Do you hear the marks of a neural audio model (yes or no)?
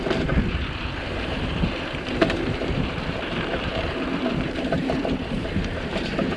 yes